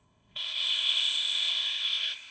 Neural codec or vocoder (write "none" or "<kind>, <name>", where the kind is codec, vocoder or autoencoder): codec, ZipCodec